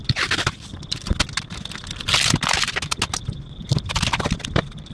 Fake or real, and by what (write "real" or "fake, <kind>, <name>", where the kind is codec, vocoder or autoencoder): real